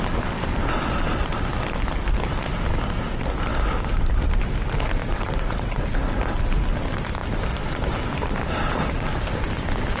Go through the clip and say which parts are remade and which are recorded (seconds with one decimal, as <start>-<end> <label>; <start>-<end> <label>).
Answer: 0.0-5.0 recorded; 5.0-5.8 remade; 5.8-10.0 recorded